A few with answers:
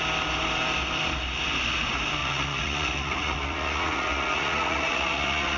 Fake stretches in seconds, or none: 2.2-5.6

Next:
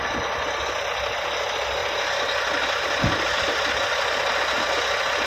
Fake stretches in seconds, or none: 1.8-2.4

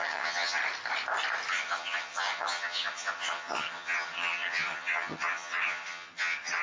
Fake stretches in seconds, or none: 0.0-0.6; 1.5-6.6

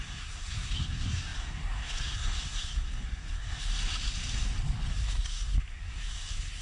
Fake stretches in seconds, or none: 0.0-3.7; 4.9-6.6

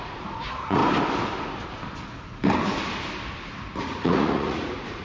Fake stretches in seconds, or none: 0.0-0.8; 3.8-5.0